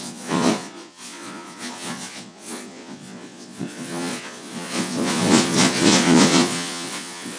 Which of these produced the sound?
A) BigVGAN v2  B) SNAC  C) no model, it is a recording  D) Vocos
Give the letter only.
D